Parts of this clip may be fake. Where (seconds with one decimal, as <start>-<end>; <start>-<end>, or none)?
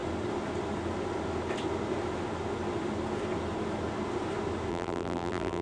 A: 4.7-5.6